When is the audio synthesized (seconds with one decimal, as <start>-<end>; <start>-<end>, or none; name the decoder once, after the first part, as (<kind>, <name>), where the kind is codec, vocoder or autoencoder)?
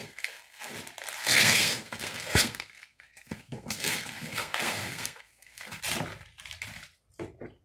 0.0-0.7 (codec, SNAC); 1.2-5.8